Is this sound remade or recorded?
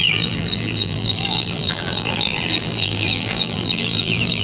remade